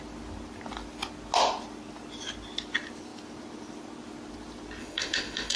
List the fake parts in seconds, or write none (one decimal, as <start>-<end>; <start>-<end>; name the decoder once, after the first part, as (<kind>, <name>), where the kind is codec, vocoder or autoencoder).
4.8-5.6 (autoencoder, DAC-VAE)